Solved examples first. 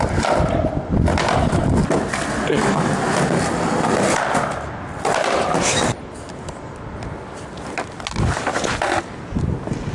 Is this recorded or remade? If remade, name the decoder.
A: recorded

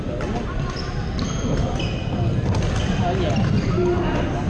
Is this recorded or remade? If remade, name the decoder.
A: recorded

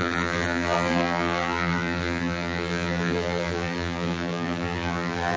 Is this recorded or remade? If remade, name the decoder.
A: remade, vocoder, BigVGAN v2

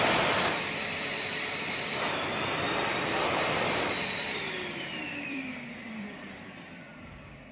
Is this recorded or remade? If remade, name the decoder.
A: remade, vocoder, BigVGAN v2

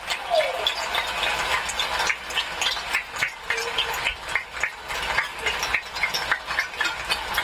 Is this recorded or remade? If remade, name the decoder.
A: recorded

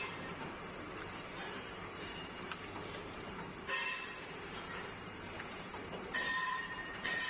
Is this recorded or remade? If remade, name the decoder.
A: remade, vocoder, BigVGAN v2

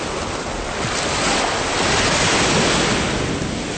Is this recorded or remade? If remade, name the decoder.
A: recorded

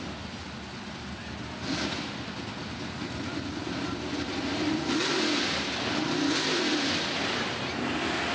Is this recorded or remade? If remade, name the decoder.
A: remade, vocoder, BigVGAN v2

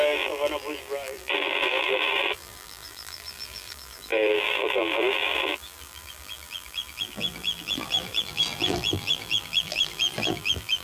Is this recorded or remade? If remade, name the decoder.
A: remade, vocoder, BigVGAN v2